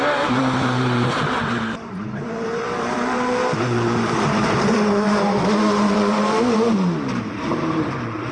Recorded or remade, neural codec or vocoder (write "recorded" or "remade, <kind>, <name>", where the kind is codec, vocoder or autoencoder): remade, vocoder, BigVGAN v2